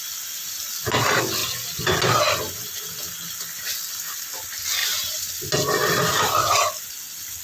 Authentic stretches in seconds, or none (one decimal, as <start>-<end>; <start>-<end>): 0.0-4.8; 5.3-7.4

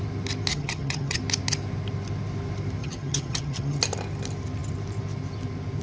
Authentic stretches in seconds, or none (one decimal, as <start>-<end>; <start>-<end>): 0.0-0.5; 1.2-2.8; 3.8-5.8